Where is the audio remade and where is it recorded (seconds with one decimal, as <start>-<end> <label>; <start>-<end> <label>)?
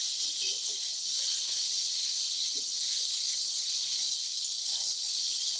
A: 0.0-2.8 remade; 2.8-3.3 recorded; 3.3-4.3 remade; 4.3-4.7 recorded; 4.7-5.6 remade